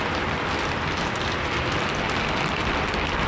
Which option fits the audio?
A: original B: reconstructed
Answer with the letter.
A